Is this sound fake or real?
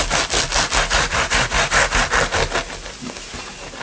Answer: real